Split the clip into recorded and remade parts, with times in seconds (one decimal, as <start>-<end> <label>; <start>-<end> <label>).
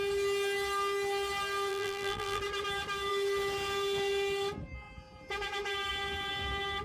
0.0-1.7 recorded; 1.7-2.4 remade; 2.4-6.8 recorded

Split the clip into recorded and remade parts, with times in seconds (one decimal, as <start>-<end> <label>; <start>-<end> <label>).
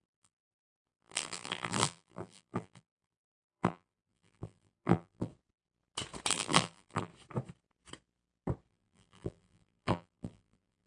0.0-5.3 remade; 5.3-6.3 recorded; 6.3-7.1 remade; 7.1-8.7 recorded; 8.7-10.9 remade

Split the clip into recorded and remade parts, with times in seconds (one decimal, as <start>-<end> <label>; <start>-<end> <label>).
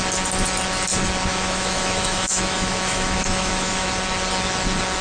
0.0-1.3 recorded; 1.3-3.9 remade; 3.9-5.0 recorded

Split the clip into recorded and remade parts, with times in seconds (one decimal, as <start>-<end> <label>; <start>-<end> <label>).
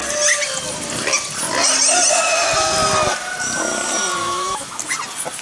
0.0-4.2 recorded; 4.2-4.8 remade; 4.8-5.4 recorded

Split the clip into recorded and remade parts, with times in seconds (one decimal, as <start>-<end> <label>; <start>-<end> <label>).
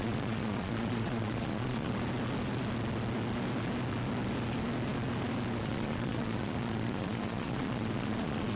0.0-1.9 remade; 1.9-5.6 recorded; 5.6-8.6 remade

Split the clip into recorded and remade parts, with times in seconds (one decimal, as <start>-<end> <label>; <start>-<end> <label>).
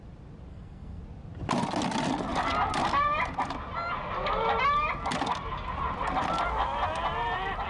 0.0-0.5 recorded; 0.5-1.0 remade; 1.0-7.7 recorded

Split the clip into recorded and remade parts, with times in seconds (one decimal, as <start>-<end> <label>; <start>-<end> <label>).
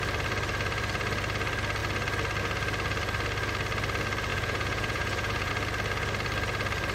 0.0-4.3 recorded; 4.3-5.5 remade; 5.5-6.9 recorded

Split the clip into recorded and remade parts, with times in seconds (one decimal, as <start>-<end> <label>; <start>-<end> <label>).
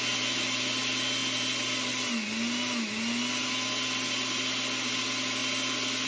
0.0-6.1 recorded